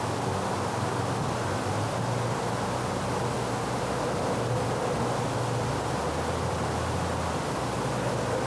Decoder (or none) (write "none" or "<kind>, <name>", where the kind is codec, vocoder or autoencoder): none